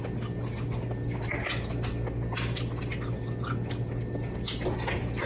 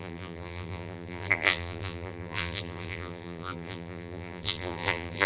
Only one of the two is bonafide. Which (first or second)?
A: first